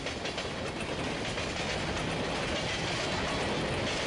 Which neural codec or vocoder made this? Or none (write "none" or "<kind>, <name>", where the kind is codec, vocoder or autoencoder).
none